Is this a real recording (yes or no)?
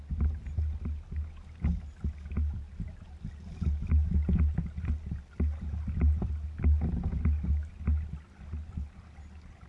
yes